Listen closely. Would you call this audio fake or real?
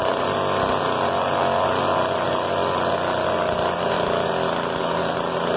real